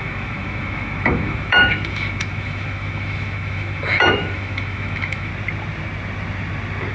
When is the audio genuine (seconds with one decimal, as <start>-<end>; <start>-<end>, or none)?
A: 5.3-6.9